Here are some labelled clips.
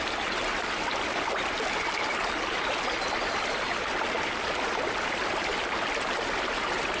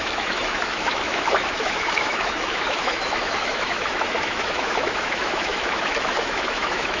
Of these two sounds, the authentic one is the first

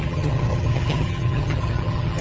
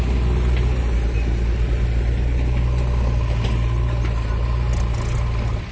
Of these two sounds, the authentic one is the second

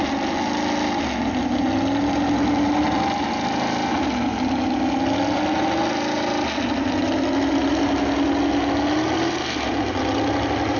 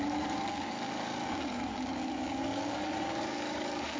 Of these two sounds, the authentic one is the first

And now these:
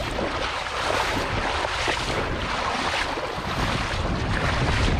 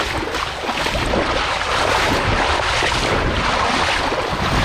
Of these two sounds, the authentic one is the first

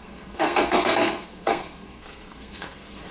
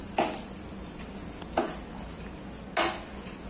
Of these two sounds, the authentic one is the second